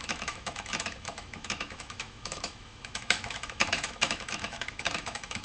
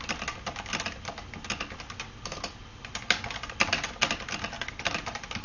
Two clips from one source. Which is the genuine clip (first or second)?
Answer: second